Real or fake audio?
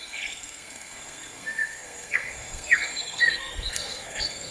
fake